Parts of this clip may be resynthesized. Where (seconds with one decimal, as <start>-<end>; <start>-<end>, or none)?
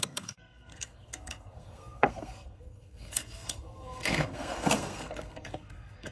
0.0-6.1